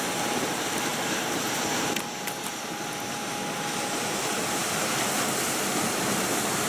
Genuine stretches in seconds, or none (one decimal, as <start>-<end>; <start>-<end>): 0.0-6.7